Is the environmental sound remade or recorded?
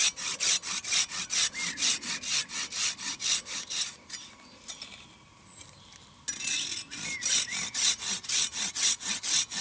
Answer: recorded